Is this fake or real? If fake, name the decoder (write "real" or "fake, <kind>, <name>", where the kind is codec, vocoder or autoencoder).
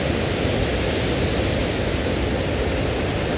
real